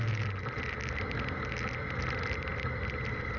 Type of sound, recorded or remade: recorded